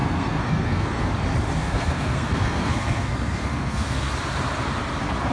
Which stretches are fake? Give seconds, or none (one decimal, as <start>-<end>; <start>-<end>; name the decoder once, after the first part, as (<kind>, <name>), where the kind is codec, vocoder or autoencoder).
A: 0.0-1.1 (codec, SNAC); 1.6-4.1